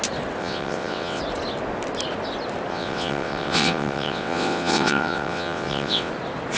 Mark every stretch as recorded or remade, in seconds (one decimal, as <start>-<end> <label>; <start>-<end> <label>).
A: 0.0-0.4 recorded; 0.4-1.2 remade; 1.2-2.7 recorded; 2.7-6.1 remade; 6.1-6.6 recorded